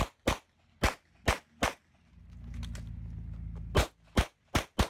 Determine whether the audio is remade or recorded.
recorded